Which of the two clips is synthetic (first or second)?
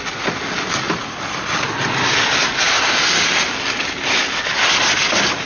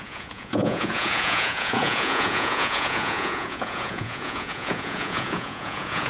second